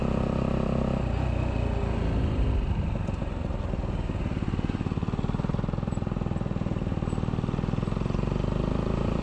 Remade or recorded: recorded